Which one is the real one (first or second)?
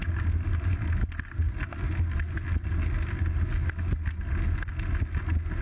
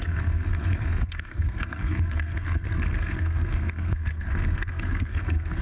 first